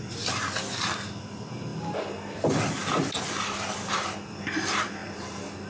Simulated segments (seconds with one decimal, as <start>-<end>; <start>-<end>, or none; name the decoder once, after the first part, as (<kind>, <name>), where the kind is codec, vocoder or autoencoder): 1.2-5.7 (vocoder, BigVGAN v2)